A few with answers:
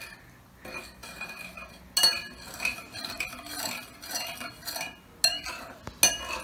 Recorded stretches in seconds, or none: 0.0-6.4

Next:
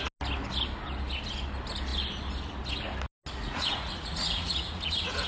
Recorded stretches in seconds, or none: 0.0-3.4